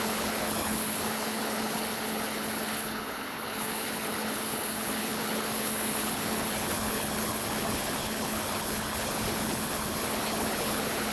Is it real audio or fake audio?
fake